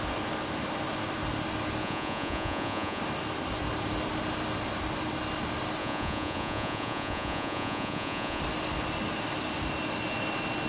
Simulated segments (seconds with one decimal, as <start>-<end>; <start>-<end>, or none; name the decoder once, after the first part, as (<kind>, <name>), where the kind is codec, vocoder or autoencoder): 1.8-3.0 (vocoder, Vocos); 5.8-8.4